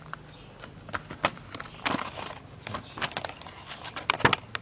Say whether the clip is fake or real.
real